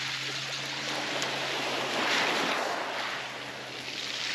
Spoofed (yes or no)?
no